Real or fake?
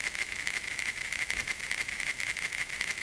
fake